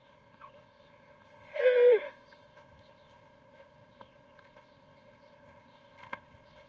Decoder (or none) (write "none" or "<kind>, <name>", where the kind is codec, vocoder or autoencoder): codec, ZipCodec